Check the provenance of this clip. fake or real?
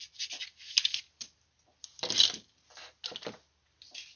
real